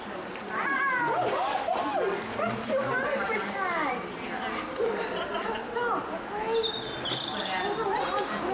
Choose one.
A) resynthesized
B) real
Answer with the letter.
B